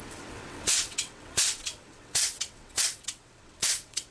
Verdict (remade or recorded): remade